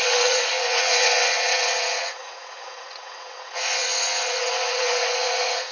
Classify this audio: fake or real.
fake